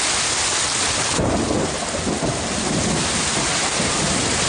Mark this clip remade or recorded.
recorded